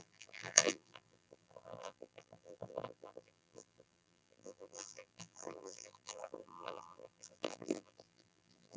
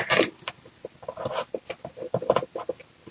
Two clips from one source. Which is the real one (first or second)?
second